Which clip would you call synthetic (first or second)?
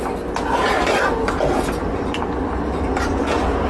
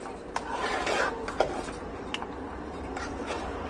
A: second